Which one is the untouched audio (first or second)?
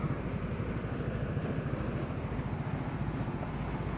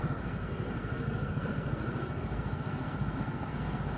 first